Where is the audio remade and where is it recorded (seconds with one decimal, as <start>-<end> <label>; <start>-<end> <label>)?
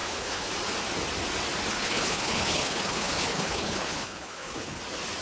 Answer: 0.0-0.5 remade; 0.5-1.7 recorded; 1.7-4.8 remade; 4.8-5.2 recorded